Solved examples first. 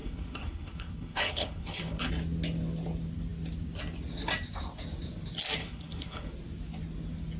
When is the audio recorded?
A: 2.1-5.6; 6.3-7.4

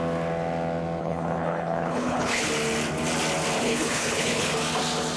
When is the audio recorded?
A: 0.0-1.0; 2.5-3.6; 4.5-5.2

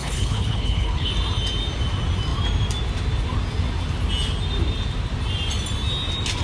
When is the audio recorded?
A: 1.1-6.4

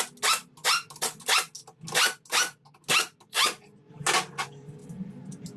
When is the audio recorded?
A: 0.0-5.6